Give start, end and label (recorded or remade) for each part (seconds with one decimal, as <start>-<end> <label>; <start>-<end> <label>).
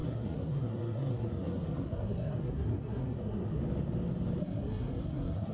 0.0-3.6 remade; 3.6-4.4 recorded; 4.4-5.5 remade